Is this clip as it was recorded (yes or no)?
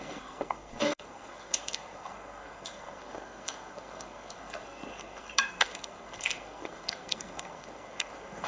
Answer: no